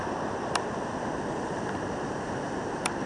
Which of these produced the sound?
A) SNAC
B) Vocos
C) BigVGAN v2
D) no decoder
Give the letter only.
D